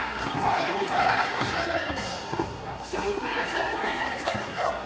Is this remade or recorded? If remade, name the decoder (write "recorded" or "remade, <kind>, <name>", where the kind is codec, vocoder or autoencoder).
remade, codec, SNAC